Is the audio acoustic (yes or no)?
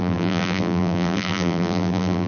no